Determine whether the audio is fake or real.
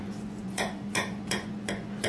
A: fake